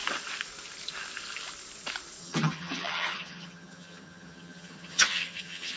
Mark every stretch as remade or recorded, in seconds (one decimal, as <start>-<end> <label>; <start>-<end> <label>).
0.0-2.2 recorded; 2.2-5.8 remade